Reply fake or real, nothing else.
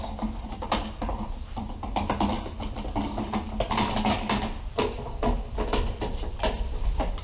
real